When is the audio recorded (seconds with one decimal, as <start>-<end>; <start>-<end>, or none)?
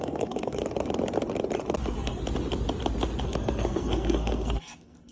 0.6-1.8; 2.2-3.2